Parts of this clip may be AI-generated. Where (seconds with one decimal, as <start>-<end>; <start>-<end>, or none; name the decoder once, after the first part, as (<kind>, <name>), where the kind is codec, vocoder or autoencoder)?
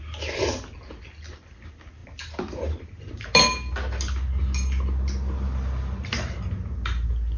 none